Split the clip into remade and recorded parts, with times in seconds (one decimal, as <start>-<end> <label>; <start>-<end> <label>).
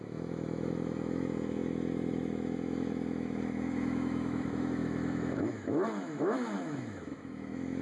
0.0-7.8 remade